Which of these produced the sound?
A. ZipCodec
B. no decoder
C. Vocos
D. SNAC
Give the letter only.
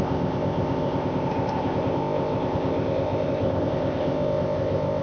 A